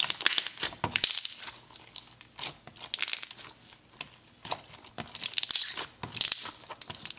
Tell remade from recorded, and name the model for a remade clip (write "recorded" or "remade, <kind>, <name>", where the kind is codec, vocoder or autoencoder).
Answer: recorded